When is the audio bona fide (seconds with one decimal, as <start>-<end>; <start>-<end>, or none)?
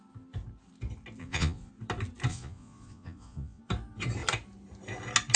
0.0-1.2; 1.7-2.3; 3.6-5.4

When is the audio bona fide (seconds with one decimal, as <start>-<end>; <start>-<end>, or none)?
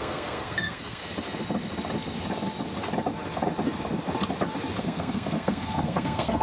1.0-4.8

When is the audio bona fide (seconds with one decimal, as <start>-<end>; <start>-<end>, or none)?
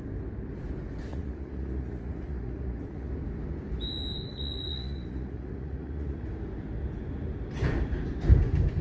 0.0-1.1; 3.1-4.3; 6.3-8.8